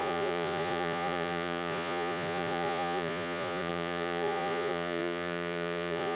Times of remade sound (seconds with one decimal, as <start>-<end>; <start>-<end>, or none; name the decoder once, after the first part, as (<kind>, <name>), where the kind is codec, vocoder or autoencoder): 0.0-6.2 (vocoder, Vocos)